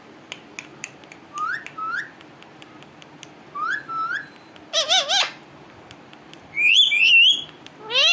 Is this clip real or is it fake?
real